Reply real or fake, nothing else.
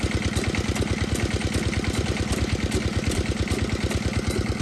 real